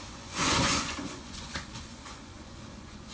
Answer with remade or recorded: remade